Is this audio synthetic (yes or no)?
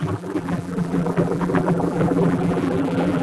yes